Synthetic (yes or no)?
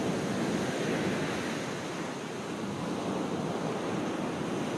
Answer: no